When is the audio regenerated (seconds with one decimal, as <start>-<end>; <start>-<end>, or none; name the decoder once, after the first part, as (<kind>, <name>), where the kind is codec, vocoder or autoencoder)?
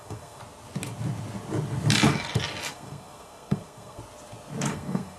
0.0-0.4 (codec, SNAC); 2.7-4.0; 4.7-5.2